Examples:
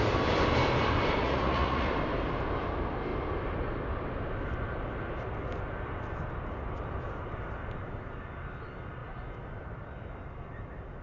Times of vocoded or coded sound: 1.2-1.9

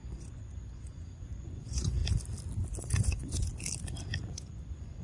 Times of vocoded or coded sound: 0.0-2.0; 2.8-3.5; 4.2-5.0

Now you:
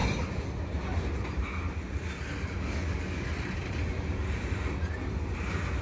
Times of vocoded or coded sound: none